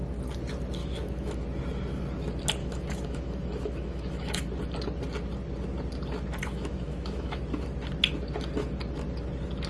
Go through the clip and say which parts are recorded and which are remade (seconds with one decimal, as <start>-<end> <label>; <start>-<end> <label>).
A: 0.0-0.8 recorded; 0.8-1.4 remade; 1.4-2.6 recorded; 2.6-4.5 remade; 4.5-6.4 recorded; 6.4-7.4 remade; 7.4-9.7 recorded